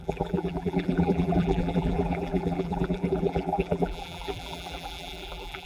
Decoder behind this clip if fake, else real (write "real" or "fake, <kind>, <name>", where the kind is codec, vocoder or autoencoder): fake, vocoder, BigVGAN v2